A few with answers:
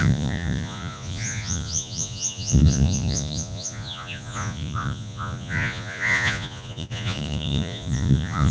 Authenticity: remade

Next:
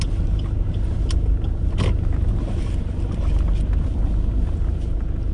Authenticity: recorded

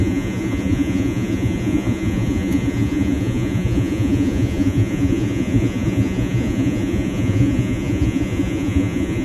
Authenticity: remade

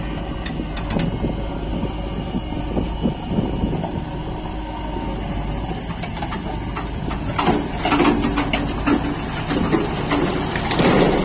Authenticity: recorded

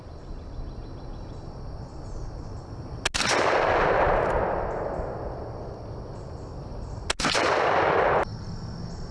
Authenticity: recorded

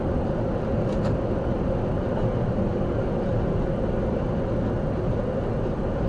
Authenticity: recorded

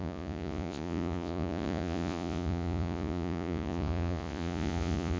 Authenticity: remade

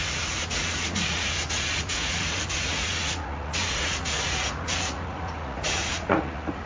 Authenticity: remade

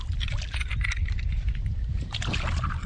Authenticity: recorded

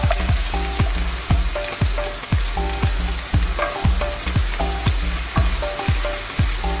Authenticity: recorded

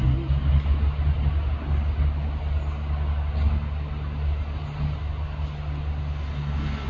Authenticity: recorded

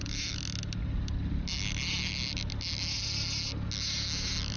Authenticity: recorded